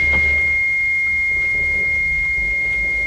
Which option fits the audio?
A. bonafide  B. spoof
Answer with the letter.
A